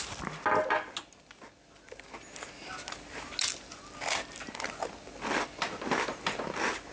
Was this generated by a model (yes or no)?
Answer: no